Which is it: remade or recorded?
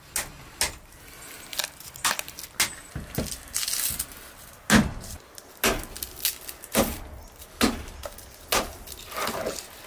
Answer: recorded